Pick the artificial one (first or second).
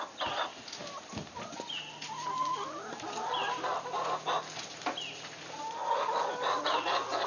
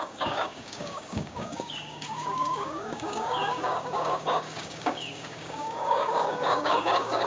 second